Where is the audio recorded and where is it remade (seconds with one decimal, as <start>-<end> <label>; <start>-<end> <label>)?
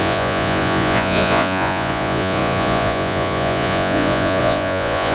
0.0-5.1 remade